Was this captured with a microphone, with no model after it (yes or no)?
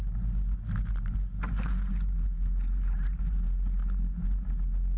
yes